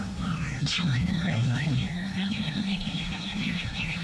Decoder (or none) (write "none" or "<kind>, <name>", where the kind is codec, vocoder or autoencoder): codec, SNAC